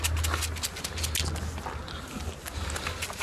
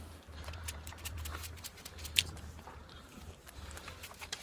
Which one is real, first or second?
first